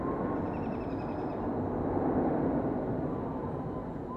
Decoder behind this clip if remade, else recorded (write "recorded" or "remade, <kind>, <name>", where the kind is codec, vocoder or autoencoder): recorded